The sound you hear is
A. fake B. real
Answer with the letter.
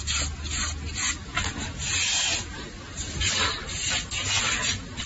B